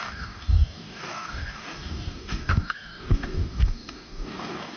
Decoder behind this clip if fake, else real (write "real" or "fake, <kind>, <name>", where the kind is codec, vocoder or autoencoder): fake, codec, DAC